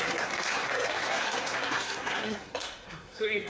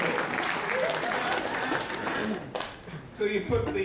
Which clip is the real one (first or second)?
second